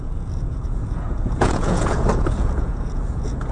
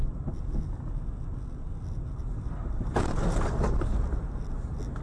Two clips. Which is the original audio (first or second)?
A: second